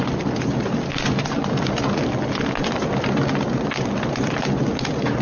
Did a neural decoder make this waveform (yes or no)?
no